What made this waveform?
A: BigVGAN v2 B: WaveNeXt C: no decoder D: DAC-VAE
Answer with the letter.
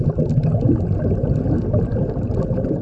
C